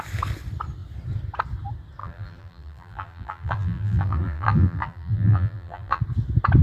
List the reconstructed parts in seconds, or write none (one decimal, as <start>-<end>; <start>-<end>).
2.0-6.0